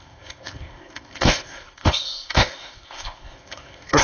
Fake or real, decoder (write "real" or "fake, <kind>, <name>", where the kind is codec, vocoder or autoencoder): fake, codec, ZipCodec